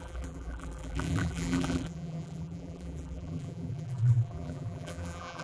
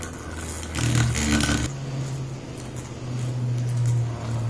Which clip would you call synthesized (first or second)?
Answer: first